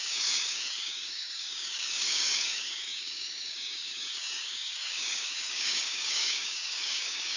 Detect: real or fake fake